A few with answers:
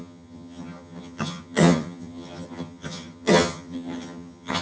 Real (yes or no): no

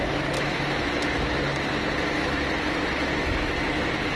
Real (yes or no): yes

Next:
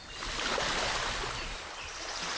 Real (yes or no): yes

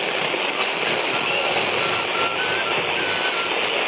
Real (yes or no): yes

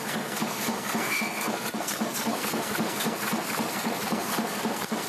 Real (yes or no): no